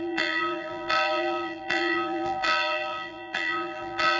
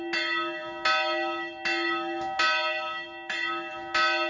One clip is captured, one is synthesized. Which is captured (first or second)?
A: second